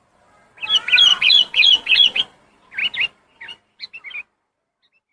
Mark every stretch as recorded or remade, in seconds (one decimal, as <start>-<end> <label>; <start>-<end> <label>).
0.0-1.1 recorded; 1.1-2.2 remade; 2.2-5.1 recorded